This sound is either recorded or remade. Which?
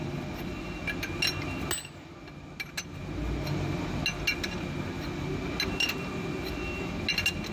recorded